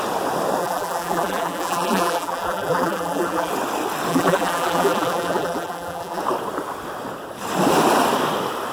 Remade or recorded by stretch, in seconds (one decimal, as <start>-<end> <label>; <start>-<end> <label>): 0.0-0.6 recorded; 0.6-3.5 remade; 3.5-4.1 recorded; 4.1-6.2 remade; 6.2-8.7 recorded